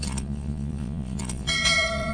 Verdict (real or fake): fake